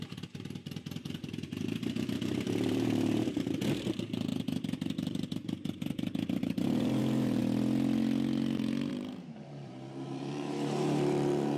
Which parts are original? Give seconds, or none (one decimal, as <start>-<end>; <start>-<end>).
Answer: 7.4-8.9